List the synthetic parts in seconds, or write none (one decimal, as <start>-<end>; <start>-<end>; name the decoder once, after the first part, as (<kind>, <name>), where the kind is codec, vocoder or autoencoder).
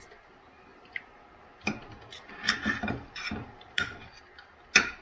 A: none